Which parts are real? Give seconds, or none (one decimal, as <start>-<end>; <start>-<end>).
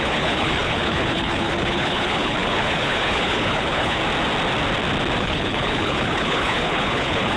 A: 4.0-5.2